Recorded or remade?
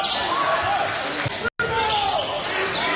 recorded